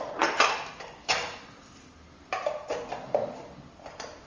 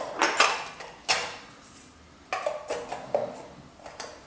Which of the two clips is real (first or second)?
second